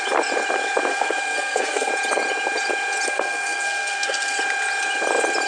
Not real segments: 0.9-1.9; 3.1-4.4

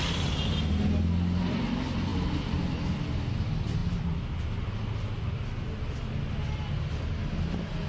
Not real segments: none

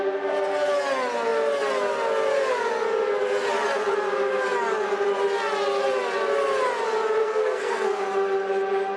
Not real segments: 7.2-8.0

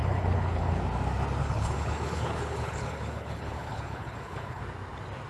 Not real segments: 0.0-0.8; 1.4-4.6